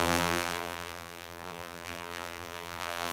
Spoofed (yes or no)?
yes